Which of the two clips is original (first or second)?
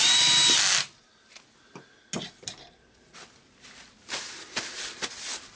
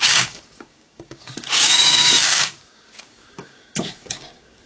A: first